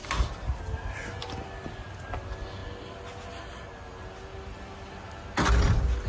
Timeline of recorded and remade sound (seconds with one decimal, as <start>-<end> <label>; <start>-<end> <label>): 0.0-0.6 remade; 0.6-1.2 recorded; 1.2-1.7 remade; 1.7-6.1 recorded